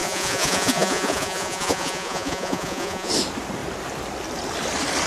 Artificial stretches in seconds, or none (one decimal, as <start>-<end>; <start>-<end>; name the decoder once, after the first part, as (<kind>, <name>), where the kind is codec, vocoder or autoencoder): 0.0-3.1 (vocoder, Vocos)